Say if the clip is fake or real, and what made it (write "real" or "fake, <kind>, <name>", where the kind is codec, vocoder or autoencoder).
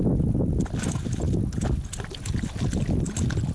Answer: real